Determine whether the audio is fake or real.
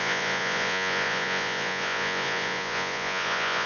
fake